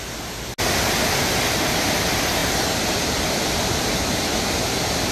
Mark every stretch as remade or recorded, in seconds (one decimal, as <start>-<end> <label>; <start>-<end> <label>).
0.0-5.1 recorded